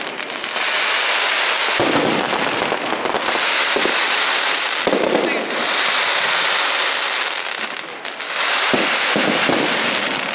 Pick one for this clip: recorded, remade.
recorded